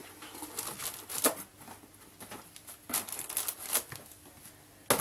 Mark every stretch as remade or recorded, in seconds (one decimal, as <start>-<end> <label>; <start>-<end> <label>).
0.0-5.0 recorded